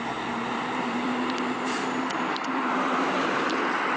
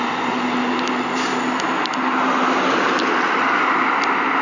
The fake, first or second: first